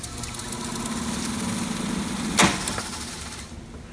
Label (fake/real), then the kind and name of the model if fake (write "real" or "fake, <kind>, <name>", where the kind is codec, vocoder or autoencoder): real